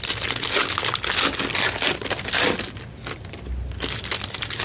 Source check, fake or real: real